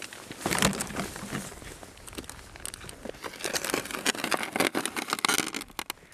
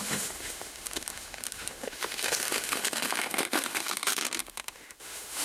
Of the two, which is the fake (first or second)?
second